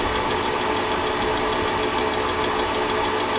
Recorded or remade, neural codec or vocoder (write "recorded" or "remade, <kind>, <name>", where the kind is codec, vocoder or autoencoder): recorded